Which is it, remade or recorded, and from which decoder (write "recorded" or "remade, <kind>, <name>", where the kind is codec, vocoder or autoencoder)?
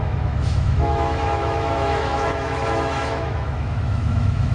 remade, autoencoder, DAC-VAE